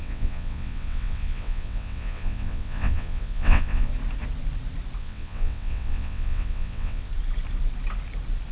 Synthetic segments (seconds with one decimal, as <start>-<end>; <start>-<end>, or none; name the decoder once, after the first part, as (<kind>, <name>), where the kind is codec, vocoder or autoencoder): 0.0-3.9 (vocoder, WaveNeXt); 5.0-7.1